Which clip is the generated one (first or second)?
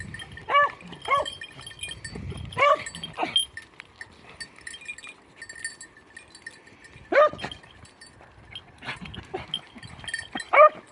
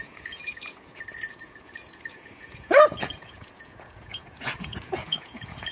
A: second